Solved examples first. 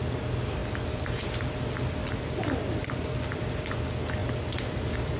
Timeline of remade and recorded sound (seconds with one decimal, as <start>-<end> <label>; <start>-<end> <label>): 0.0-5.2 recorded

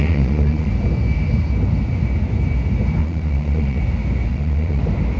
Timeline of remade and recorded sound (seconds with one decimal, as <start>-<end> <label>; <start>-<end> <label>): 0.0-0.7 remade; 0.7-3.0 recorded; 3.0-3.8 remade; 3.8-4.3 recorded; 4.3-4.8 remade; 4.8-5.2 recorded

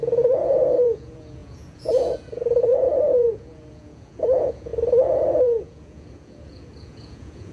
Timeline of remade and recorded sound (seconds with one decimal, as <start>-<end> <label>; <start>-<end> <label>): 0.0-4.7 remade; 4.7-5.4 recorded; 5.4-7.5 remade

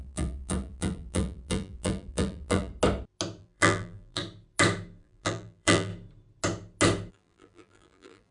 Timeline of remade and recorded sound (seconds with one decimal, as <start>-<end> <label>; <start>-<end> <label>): 0.0-2.7 remade; 2.7-3.4 recorded; 3.4-4.2 remade; 4.2-5.0 recorded; 5.0-5.9 remade; 5.9-7.1 recorded; 7.1-8.3 remade

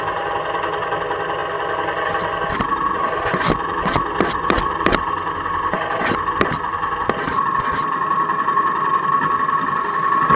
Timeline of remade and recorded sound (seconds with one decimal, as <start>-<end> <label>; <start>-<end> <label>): 0.0-10.4 recorded

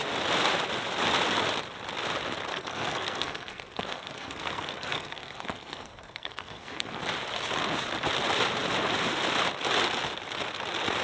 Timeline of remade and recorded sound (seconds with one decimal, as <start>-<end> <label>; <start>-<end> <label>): 0.0-2.5 recorded; 2.5-7.0 remade; 7.0-11.0 recorded

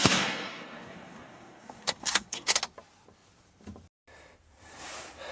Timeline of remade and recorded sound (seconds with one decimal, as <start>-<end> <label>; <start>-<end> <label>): 0.0-2.6 remade; 2.6-5.3 recorded

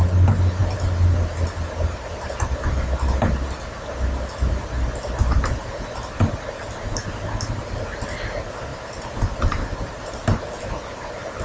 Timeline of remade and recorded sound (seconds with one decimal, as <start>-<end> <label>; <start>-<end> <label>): 0.0-11.4 recorded